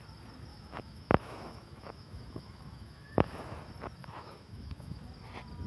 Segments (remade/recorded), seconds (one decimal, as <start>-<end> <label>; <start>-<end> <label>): 0.0-0.5 recorded; 0.5-3.6 remade; 3.6-4.0 recorded; 4.0-5.0 remade; 5.0-5.7 recorded